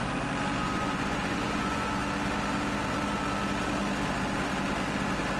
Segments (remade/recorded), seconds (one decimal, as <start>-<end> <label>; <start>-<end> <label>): 0.0-0.6 recorded; 0.6-2.0 remade; 2.0-5.4 recorded